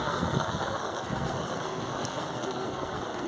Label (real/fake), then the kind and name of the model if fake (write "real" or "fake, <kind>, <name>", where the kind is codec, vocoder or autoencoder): fake, codec, SNAC